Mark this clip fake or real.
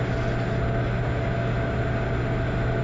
real